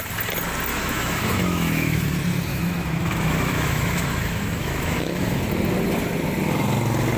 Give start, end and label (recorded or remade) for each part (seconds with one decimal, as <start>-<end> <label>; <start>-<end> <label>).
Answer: 0.0-0.7 recorded; 0.7-2.0 remade; 2.0-2.5 recorded; 2.5-5.4 remade; 5.4-7.2 recorded